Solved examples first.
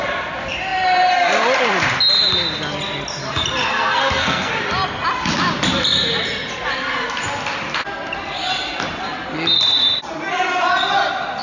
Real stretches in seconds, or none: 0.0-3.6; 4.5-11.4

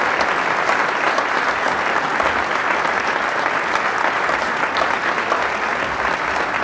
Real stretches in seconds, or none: 0.0-6.6

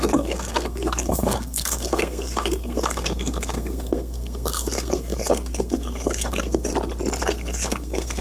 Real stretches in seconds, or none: 6.7-7.2

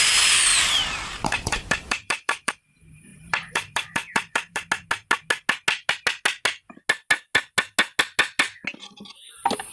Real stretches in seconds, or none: 0.0-0.5; 2.5-3.1; 4.7-9.7

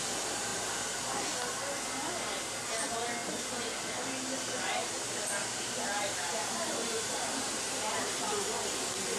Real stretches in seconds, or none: 0.0-5.4; 8.4-9.2